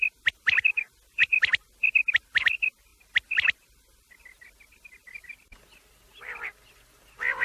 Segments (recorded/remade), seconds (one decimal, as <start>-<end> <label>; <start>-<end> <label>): 0.0-7.4 recorded